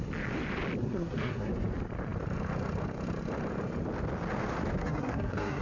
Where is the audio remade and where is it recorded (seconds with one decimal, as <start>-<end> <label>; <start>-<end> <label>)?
0.0-0.8 recorded; 0.8-1.5 remade; 1.5-4.8 recorded; 4.8-5.6 remade